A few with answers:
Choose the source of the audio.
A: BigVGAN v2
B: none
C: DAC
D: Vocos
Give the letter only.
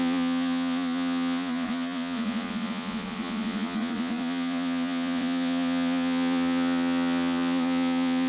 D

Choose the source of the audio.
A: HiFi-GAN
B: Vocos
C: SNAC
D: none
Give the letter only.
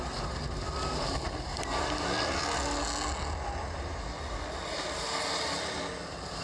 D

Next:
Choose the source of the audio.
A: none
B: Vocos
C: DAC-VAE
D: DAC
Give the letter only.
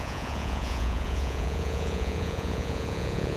B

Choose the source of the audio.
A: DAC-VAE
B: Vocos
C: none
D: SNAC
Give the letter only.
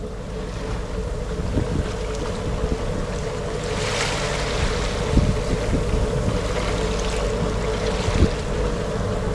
C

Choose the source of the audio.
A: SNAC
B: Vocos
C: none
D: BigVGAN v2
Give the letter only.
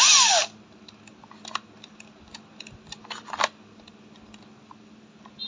C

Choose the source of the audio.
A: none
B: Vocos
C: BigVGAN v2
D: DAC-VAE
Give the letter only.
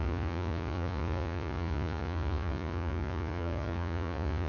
B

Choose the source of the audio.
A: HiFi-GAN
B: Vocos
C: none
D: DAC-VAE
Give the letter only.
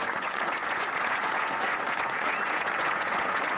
B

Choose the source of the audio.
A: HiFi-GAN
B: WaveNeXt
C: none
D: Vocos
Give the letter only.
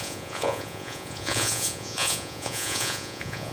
D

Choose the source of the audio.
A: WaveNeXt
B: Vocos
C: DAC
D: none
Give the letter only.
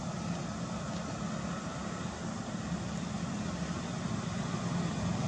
D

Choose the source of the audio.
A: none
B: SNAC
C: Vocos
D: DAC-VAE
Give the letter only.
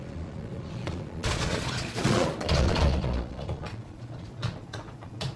C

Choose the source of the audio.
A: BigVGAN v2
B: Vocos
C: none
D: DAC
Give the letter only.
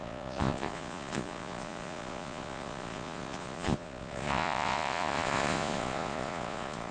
B